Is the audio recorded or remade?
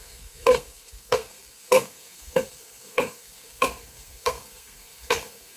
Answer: remade